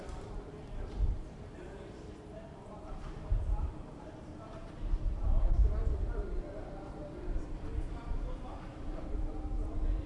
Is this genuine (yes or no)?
no